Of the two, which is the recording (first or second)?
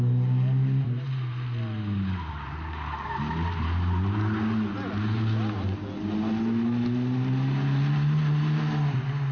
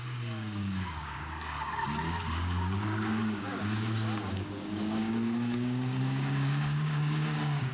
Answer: first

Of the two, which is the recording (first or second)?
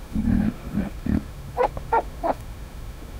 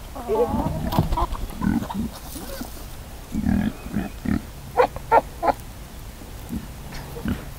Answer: second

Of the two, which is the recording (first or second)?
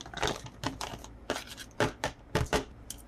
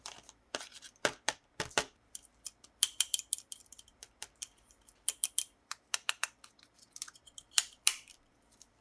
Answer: first